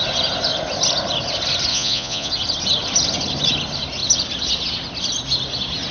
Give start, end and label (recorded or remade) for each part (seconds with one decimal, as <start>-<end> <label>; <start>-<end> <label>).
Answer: 0.0-1.7 recorded; 1.7-2.3 remade; 2.3-5.9 recorded